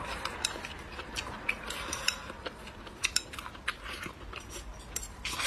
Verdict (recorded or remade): recorded